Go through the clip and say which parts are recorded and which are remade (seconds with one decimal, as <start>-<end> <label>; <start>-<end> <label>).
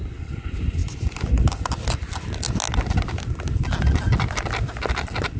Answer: 0.0-5.4 recorded